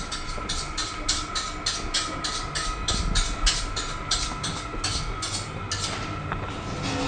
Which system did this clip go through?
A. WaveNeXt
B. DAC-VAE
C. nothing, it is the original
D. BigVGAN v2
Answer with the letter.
C